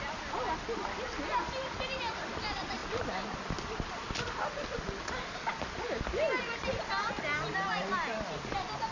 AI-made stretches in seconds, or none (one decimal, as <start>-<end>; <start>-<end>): none